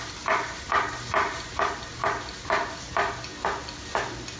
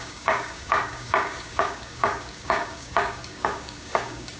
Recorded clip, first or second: first